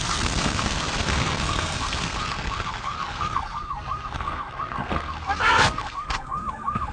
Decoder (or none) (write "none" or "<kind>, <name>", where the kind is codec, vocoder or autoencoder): codec, SNAC